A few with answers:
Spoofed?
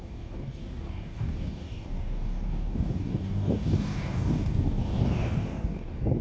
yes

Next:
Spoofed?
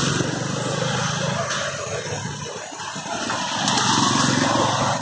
no